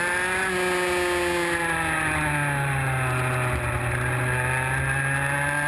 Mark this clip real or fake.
real